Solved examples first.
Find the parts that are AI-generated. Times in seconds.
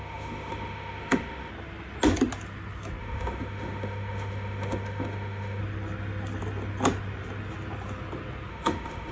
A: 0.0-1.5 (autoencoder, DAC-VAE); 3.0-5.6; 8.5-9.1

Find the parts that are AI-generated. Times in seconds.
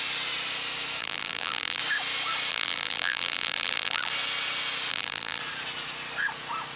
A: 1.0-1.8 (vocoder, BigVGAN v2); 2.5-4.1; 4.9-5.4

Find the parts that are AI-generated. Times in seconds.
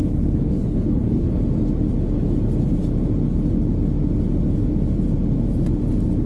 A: 0.0-1.4 (codec, HILCodec)